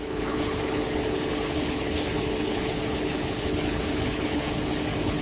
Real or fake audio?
fake